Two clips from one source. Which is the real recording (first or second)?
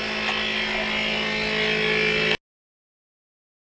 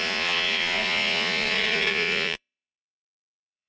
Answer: first